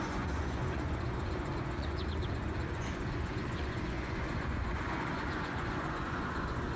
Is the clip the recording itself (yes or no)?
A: no